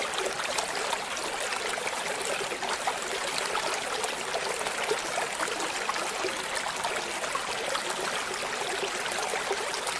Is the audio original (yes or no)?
yes